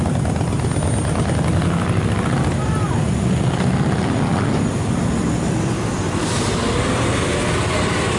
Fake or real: real